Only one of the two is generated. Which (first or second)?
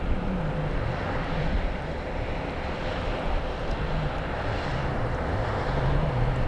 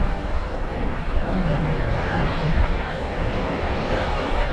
second